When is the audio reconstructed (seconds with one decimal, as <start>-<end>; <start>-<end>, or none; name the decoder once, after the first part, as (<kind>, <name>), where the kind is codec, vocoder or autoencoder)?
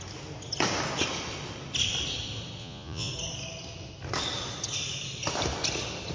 2.6-3.1 (vocoder, Vocos)